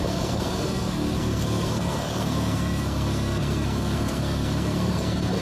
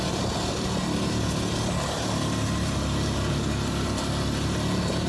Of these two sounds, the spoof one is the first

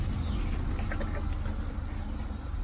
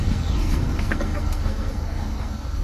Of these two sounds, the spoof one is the second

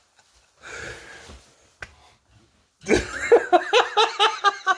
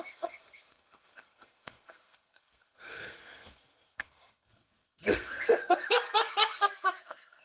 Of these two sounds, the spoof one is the second